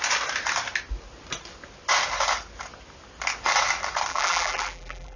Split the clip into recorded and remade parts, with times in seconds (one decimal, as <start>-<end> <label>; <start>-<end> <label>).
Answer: 0.0-4.1 recorded; 4.1-5.2 remade